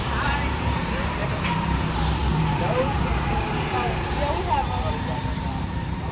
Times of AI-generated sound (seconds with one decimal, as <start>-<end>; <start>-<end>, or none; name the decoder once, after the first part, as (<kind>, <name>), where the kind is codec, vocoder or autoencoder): 0.0-6.1 (vocoder, BigVGAN v2)